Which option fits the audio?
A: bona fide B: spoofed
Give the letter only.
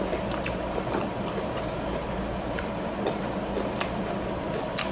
B